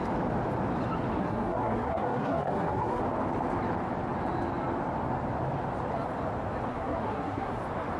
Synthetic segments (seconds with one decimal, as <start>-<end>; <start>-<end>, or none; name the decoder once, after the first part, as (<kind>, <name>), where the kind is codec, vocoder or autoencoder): 1.2-3.0 (codec, SNAC); 6.7-7.6